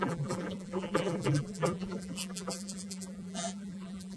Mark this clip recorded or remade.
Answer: remade